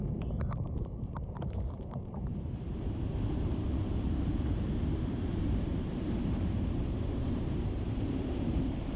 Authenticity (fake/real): fake